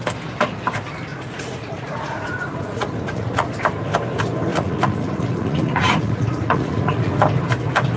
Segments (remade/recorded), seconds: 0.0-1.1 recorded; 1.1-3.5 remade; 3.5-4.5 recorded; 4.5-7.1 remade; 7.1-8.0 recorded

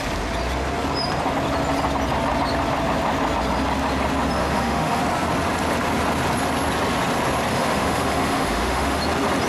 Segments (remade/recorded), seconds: 0.0-4.4 recorded; 4.4-5.0 remade; 5.0-7.5 recorded; 7.5-9.0 remade; 9.0-9.5 recorded

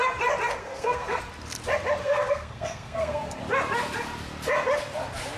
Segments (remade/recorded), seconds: 0.0-0.6 recorded; 0.6-1.2 remade; 1.2-2.0 recorded; 2.0-3.4 remade; 3.4-5.4 recorded

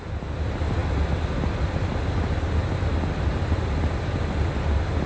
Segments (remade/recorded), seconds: 0.0-5.1 recorded

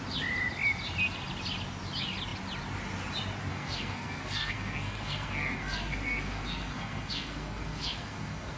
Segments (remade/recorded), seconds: 0.0-3.5 recorded; 3.5-8.6 remade

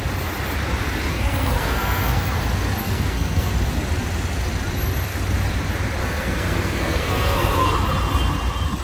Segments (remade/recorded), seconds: 0.0-1.1 recorded; 1.1-2.4 remade; 2.4-2.8 recorded; 2.8-3.5 remade; 3.5-6.0 recorded; 6.0-7.7 remade; 7.7-8.8 recorded

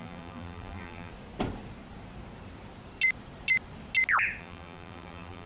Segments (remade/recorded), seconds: 0.0-1.1 remade; 1.1-4.4 recorded; 4.4-5.5 remade